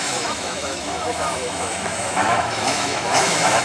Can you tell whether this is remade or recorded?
remade